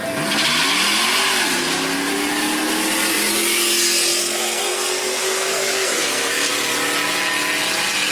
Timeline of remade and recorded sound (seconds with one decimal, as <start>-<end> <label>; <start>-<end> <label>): 0.0-4.2 recorded; 4.2-6.5 remade; 6.5-8.1 recorded